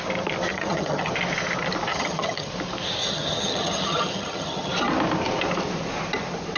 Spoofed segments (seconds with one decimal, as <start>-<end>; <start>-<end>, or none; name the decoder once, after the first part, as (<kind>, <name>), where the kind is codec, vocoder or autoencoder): 0.5-1.1 (vocoder, HiFi-GAN); 1.9-2.5; 3.0-4.7